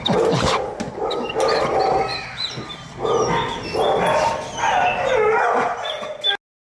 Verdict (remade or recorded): recorded